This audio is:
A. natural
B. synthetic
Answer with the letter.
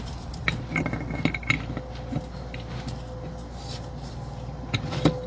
A